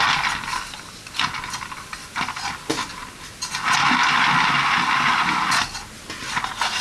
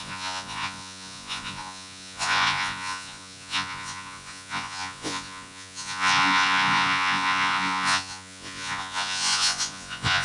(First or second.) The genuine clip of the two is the first